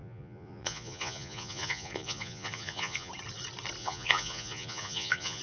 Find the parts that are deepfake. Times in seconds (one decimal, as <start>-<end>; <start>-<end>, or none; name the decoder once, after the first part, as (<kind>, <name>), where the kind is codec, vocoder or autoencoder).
0.0-3.1 (vocoder, Vocos); 3.8-5.4